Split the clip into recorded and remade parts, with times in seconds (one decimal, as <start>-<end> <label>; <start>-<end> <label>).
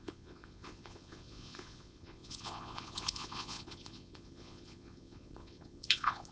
0.0-6.3 remade